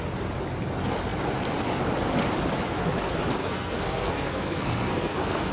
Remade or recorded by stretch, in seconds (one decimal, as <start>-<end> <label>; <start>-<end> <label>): 0.0-3.4 recorded; 3.4-5.5 remade